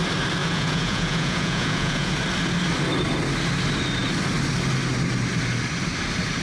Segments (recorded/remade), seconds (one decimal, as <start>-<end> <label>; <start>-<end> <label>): 0.0-0.4 recorded; 0.4-2.1 remade; 2.1-6.4 recorded